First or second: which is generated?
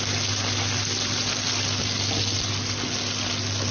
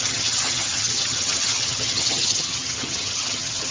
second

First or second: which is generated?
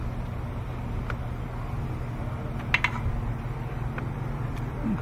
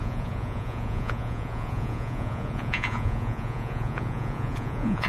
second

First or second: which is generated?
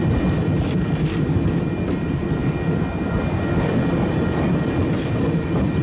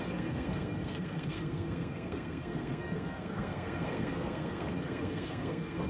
second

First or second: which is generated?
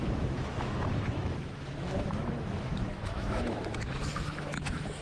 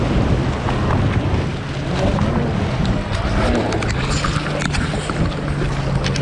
first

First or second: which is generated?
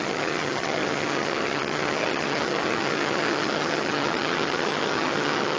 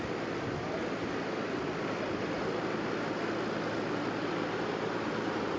first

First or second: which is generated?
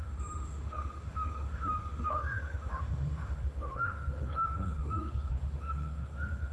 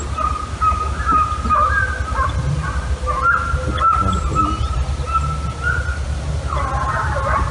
first